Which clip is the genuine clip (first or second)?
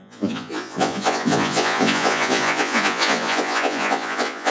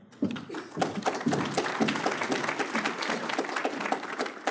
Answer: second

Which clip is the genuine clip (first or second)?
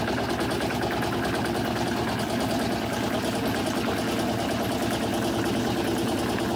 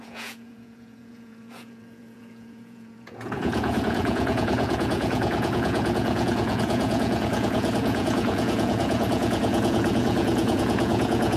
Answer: first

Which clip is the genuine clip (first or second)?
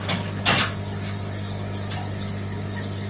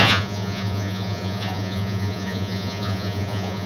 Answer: first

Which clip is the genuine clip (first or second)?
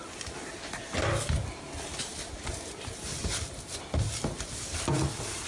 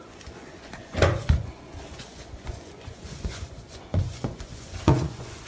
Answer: first